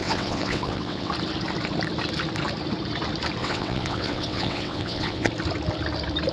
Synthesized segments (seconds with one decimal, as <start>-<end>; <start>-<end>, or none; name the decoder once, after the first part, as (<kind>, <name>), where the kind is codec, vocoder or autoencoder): 0.0-1.1 (vocoder, WaveNeXt); 3.4-5.3